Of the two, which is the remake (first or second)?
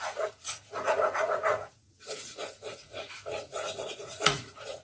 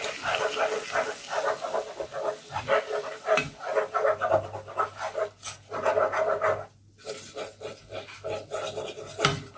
first